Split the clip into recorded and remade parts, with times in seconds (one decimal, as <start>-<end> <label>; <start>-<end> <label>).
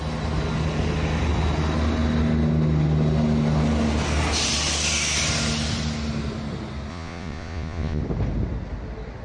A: 0.0-6.9 recorded; 6.9-8.0 remade; 8.0-9.2 recorded